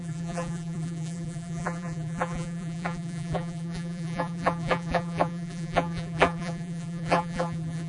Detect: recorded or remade remade